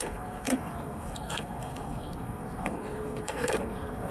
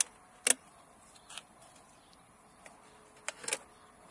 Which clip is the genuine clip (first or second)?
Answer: second